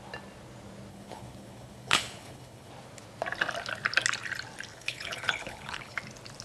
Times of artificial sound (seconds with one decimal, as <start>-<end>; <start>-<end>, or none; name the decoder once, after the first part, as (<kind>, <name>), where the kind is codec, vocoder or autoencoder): 0.9-2.7 (codec, HILCodec); 4.7-6.0